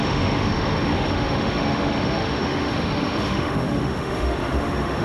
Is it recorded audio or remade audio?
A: remade